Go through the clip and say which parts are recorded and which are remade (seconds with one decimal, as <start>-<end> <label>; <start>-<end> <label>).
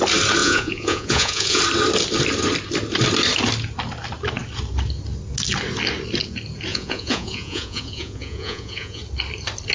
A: 0.0-0.4 recorded; 0.4-1.6 remade; 1.6-6.7 recorded; 6.7-9.0 remade; 9.0-9.7 recorded